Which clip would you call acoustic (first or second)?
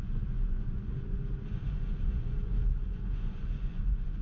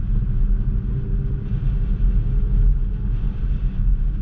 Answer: second